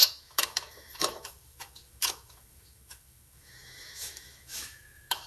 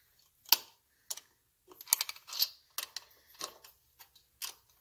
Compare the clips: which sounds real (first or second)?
second